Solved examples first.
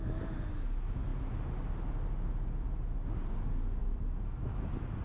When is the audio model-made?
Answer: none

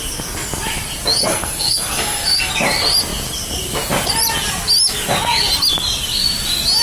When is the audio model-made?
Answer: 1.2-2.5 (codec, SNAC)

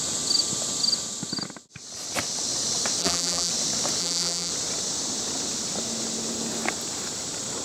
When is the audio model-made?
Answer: 3.0-3.5 (vocoder, BigVGAN v2); 4.0-4.5

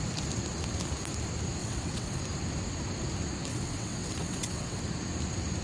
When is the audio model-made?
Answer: 1.6-2.2 (vocoder, WaveNeXt); 3.5-4.8

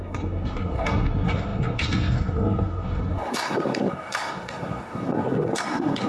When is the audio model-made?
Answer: 0.0-6.1 (codec, SNAC)

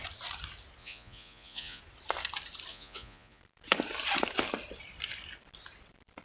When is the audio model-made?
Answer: 0.8-1.8 (vocoder, Vocos); 2.7-3.4

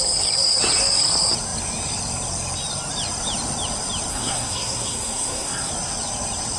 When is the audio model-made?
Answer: 4.1-5.7 (codec, SNAC)

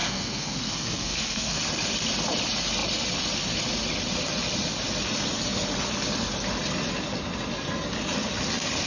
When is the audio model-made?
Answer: 0.0-1.6 (codec, SNAC)